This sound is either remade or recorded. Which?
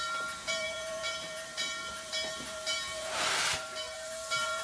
remade